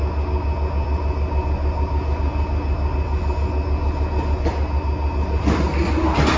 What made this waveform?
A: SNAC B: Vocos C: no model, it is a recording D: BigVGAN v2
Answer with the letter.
C